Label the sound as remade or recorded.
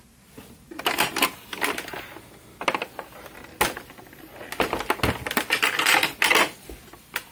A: recorded